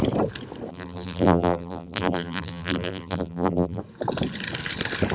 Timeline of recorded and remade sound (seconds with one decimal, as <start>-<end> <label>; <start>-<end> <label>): 0.0-0.7 recorded; 0.7-3.8 remade; 3.8-5.1 recorded